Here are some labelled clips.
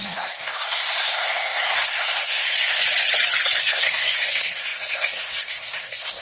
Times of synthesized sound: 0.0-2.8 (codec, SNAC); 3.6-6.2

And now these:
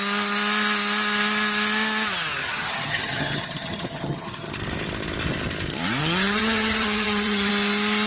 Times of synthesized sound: 2.4-4.5 (vocoder, HiFi-GAN); 6.0-7.5

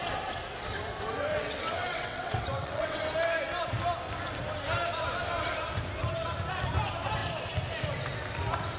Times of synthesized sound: 1.3-3.0 (vocoder, WaveNeXt)

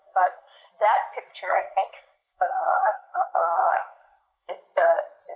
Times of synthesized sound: 0.0-0.7 (codec, SNAC); 1.3-4.5